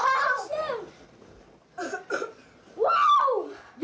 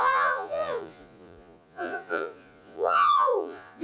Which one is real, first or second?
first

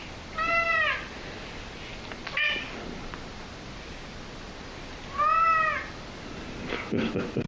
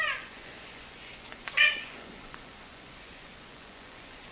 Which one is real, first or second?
first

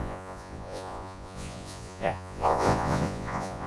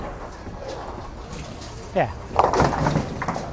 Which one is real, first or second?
second